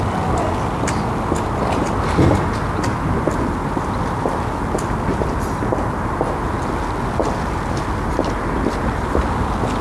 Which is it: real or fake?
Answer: real